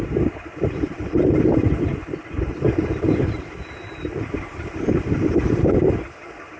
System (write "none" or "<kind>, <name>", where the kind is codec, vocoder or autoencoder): none